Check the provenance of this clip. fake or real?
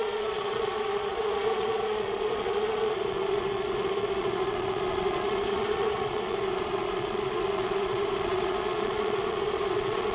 fake